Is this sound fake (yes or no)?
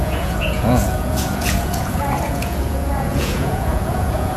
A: yes